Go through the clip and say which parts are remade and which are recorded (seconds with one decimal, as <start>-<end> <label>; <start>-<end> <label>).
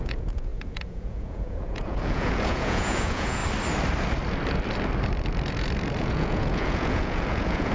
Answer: 0.0-3.4 remade; 3.4-6.0 recorded; 6.0-7.7 remade